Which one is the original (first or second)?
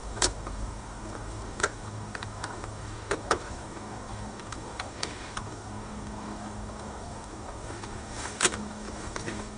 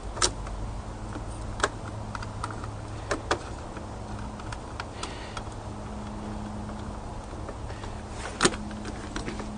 second